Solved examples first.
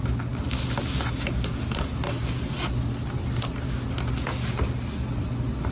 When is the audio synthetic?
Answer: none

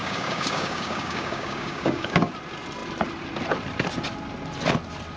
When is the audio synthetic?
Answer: 0.0-2.3 (codec, DAC)

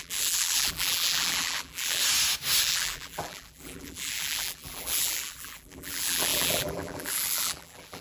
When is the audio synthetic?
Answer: 0.0-2.0 (vocoder, BigVGAN v2); 2.6-8.0

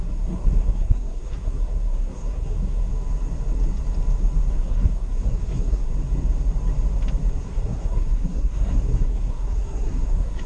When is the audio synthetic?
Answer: 0.0-2.9 (codec, SNAC); 4.5-5.9; 7.4-10.5

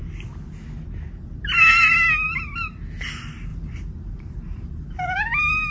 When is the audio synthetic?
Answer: 3.5-5.1 (vocoder, BigVGAN v2)

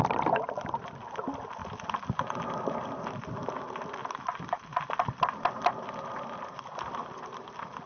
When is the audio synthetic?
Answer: none

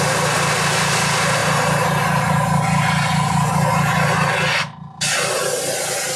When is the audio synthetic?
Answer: none